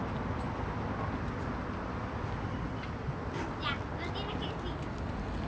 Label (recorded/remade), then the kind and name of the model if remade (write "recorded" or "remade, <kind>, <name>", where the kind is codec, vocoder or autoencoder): recorded